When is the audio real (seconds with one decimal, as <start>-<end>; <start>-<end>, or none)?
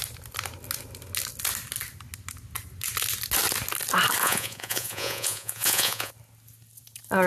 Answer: 0.0-4.2; 6.1-7.3